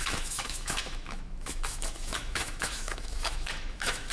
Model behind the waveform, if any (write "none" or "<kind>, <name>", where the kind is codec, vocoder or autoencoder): autoencoder, DAC-VAE